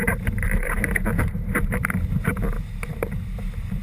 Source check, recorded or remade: remade